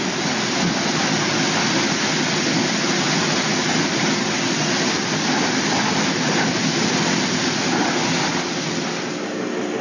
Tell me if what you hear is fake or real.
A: real